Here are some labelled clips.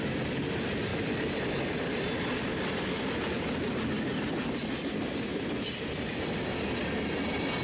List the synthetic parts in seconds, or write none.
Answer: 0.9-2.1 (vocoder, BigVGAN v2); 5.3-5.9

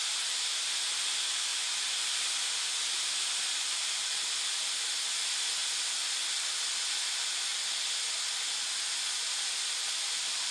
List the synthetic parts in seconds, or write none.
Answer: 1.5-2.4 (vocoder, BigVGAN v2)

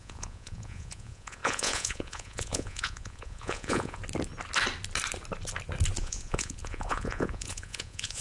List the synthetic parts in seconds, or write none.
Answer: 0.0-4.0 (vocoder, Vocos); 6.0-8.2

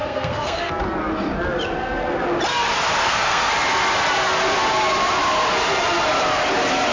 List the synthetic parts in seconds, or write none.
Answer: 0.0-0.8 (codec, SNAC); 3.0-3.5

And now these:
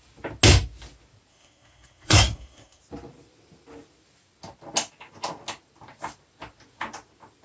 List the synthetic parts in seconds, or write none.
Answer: 1.3-2.8 (codec, SNAC)

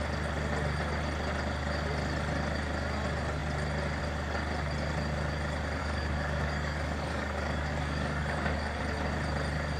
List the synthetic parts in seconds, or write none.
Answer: 5.8-8.8 (codec, DAC)